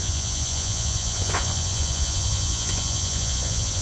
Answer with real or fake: fake